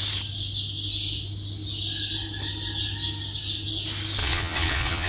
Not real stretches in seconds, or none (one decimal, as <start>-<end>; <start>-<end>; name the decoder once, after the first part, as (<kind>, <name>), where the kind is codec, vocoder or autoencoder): 4.2-5.1 (vocoder, Vocos)